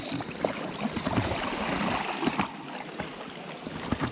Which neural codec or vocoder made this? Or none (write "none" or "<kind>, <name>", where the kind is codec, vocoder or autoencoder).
none